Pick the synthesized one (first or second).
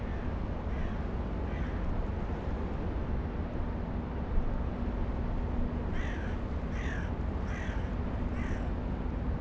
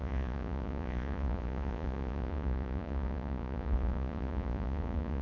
second